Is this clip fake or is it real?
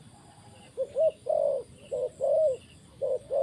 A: real